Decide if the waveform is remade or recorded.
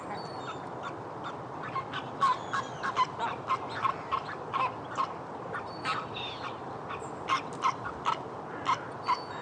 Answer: recorded